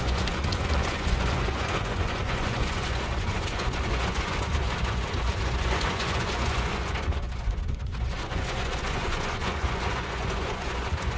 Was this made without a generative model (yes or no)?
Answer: no